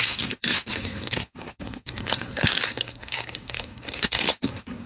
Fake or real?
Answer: fake